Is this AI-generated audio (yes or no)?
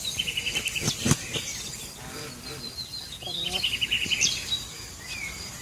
no